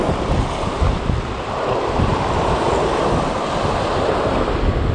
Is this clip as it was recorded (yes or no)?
yes